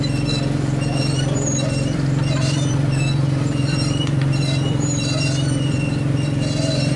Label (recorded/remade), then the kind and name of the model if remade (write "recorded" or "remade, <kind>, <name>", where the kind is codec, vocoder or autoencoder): remade, vocoder, BigVGAN v2